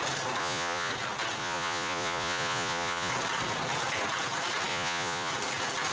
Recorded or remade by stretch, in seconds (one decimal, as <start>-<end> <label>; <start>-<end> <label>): 0.0-0.4 recorded; 0.4-0.9 remade; 0.9-1.4 recorded; 1.4-3.1 remade; 3.1-4.7 recorded; 4.7-5.3 remade; 5.3-5.9 recorded